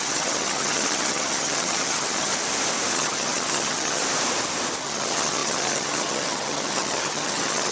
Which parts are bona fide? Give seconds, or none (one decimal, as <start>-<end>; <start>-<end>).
2.3-2.9; 4.0-4.8